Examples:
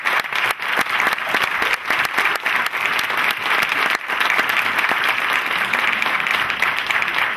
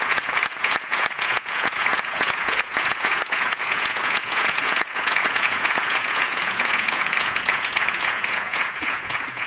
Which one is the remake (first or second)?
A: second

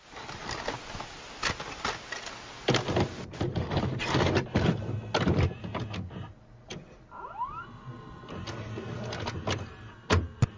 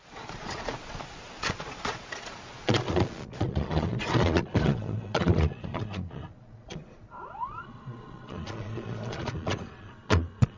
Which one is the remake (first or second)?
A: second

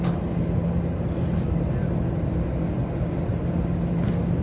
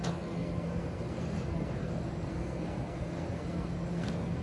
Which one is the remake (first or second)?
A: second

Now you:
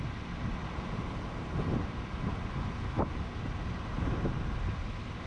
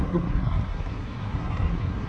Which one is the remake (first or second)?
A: second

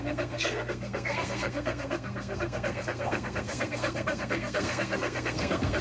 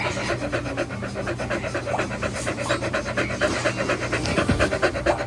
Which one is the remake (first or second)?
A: first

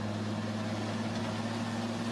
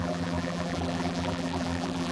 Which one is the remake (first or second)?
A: second